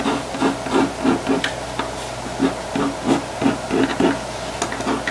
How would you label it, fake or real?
real